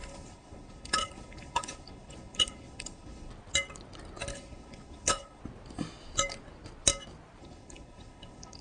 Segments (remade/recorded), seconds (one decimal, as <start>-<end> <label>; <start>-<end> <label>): 0.0-3.3 remade; 3.3-4.3 recorded; 4.3-5.4 remade; 5.4-7.4 recorded; 7.4-8.6 remade